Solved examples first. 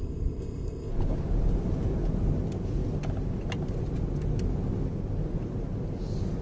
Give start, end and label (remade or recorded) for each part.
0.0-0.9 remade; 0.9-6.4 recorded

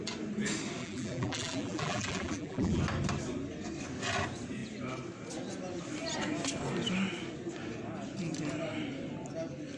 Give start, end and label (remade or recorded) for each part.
0.0-0.8 recorded; 0.8-2.8 remade; 2.8-9.8 recorded

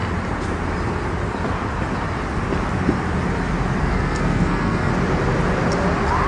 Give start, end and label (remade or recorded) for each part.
0.0-3.8 recorded; 3.8-4.9 remade; 4.9-6.3 recorded

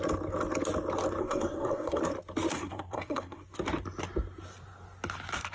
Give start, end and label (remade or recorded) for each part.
0.0-1.2 recorded; 1.2-2.0 remade; 2.0-2.5 recorded; 2.5-3.4 remade; 3.4-5.5 recorded

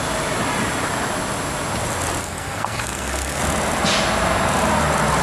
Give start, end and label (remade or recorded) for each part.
0.0-2.2 recorded; 2.2-3.4 remade; 3.4-5.2 recorded

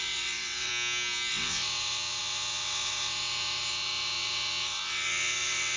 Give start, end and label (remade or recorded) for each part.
0.0-0.7 remade; 0.7-1.3 recorded; 1.3-5.8 remade

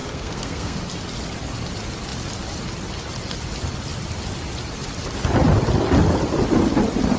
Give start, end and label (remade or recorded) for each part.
0.0-0.8 remade; 0.8-7.2 recorded